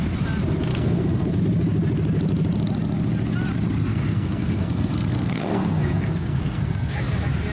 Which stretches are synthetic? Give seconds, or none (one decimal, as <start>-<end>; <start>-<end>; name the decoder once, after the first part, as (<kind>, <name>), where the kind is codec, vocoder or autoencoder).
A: 0.7-1.4 (codec, SNAC); 3.9-7.0